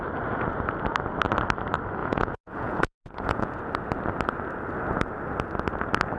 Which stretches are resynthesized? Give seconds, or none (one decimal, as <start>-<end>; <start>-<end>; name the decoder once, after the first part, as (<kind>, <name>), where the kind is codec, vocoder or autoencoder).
2.0-3.6 (vocoder, Vocos)